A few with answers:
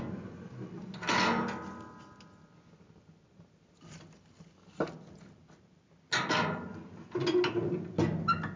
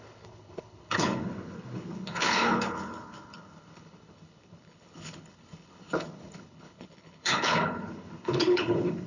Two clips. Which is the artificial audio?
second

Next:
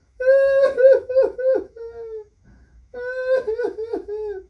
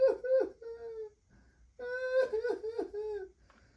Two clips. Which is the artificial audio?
first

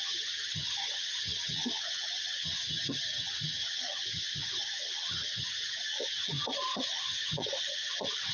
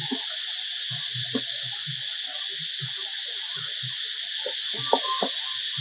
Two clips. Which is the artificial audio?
first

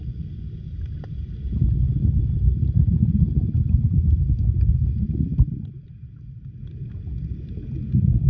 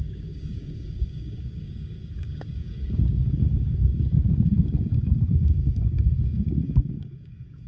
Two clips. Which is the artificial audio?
second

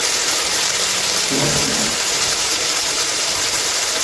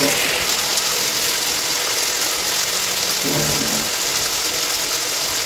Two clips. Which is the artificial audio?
first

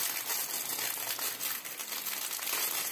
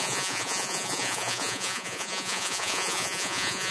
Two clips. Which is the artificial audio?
second